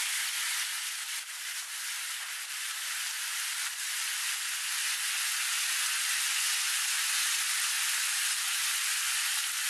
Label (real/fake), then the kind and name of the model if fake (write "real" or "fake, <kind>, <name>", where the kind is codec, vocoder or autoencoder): real